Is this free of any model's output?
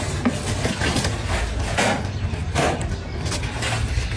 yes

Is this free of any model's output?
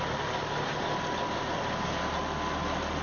yes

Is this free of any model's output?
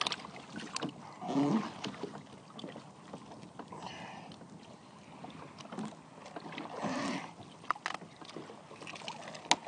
yes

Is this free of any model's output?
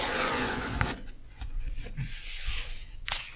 no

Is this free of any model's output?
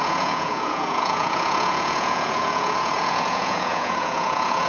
no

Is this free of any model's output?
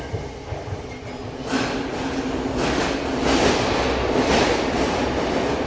yes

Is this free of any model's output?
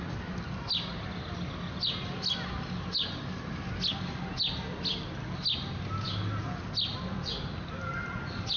yes